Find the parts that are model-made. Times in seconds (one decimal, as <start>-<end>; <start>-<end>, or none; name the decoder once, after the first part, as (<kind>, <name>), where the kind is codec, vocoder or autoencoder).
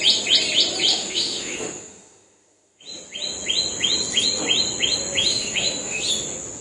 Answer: 0.9-2.8 (autoencoder, DAC-VAE); 5.3-6.0